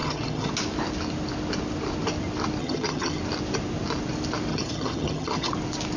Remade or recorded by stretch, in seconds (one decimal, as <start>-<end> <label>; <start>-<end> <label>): 0.0-0.5 remade; 0.5-2.6 recorded; 2.6-3.2 remade; 3.2-4.5 recorded; 4.5-5.5 remade; 5.5-6.0 recorded